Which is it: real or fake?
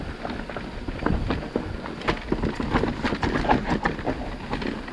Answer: real